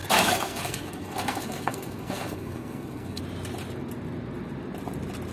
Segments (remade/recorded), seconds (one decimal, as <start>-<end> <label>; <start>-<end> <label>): 0.0-3.2 remade; 3.2-5.3 recorded